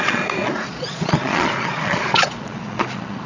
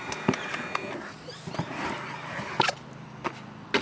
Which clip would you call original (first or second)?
second